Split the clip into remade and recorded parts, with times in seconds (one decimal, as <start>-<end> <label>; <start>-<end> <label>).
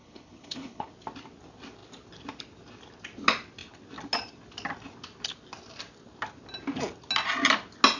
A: 0.0-0.9 remade; 0.9-8.0 recorded